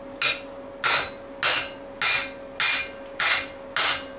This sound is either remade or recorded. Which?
recorded